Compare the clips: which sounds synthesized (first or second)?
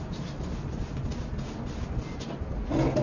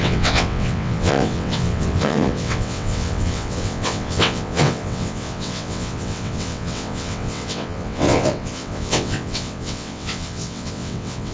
second